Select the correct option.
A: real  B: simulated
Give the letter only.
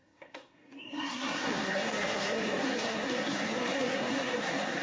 B